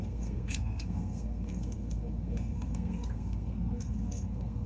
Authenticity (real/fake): fake